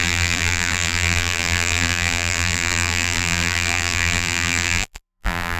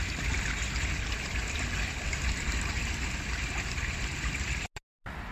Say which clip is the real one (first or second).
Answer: second